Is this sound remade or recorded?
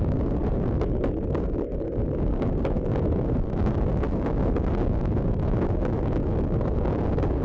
remade